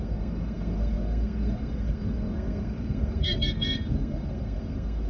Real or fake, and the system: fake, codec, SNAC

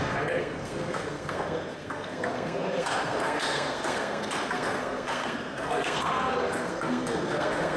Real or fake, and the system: fake, codec, SNAC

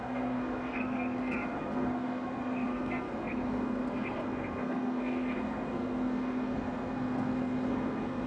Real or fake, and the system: fake, codec, SNAC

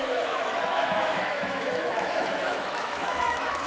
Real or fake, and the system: fake, autoencoder, DAC-VAE